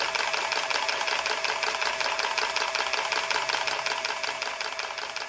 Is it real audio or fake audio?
real